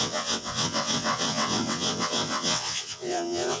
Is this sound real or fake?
fake